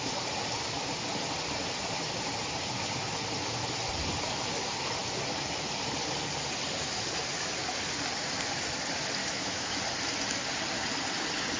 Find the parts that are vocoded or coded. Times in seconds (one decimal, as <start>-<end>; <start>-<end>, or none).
9.2-9.8